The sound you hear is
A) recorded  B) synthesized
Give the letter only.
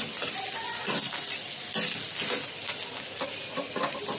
A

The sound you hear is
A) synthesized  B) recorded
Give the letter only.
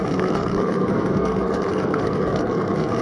A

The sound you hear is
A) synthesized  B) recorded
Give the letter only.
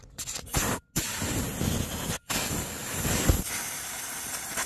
B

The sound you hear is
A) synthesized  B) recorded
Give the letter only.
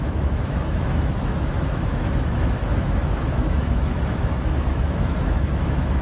A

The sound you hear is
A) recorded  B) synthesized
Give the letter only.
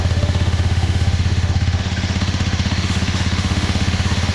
B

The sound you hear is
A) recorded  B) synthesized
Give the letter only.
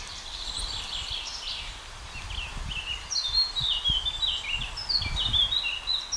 A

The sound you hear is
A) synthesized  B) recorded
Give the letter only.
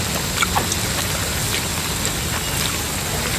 B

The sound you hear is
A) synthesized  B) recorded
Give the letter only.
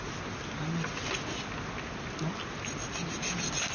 B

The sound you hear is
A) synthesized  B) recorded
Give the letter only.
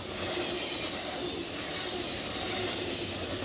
B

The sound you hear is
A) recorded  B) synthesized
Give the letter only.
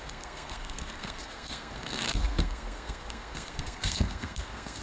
B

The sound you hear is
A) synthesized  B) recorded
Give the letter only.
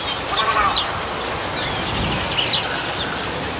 B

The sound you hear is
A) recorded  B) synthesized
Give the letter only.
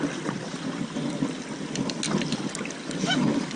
A